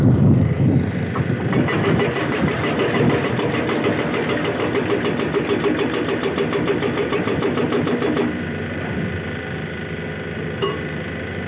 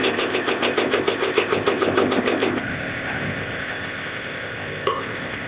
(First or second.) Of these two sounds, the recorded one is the first